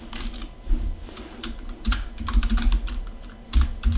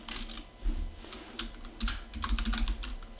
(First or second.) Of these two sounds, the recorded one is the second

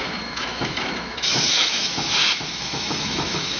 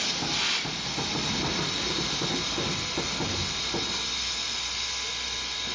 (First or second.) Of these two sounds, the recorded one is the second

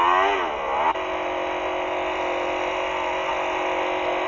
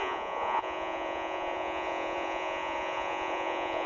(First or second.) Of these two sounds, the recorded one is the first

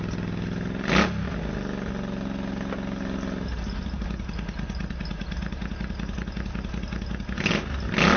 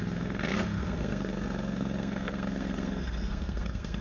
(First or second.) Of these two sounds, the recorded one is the first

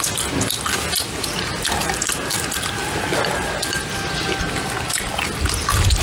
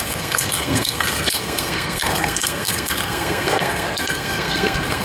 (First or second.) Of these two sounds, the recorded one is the first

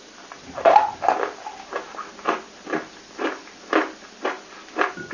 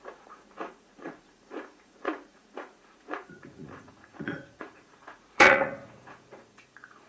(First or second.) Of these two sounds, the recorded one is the first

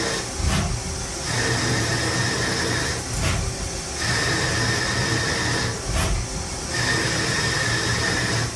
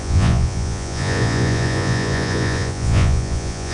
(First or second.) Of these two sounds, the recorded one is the first